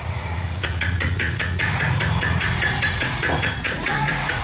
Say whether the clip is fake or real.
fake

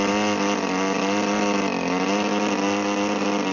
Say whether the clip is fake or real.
real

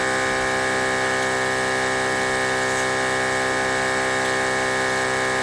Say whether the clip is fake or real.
real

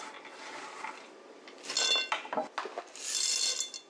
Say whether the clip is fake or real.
real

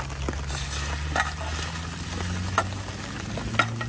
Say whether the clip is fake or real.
real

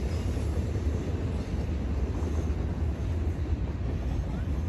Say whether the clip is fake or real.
real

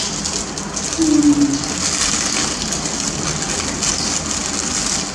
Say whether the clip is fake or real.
real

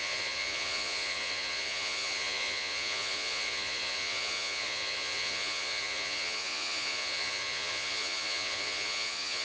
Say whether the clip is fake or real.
fake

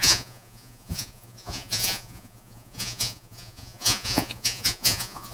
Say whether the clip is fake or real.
fake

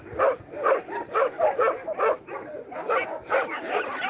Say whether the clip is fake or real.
real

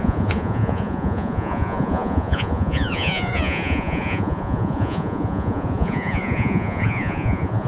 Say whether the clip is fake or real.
fake